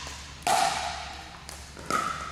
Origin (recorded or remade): recorded